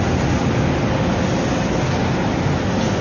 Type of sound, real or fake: real